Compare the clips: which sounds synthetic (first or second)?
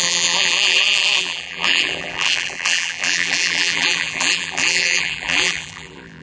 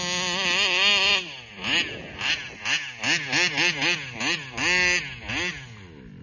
first